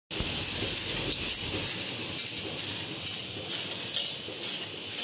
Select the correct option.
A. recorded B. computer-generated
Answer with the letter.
A